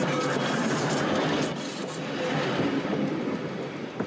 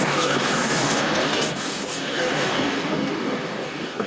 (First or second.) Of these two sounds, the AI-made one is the second